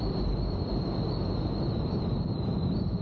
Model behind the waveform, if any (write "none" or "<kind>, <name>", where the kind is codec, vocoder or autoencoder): none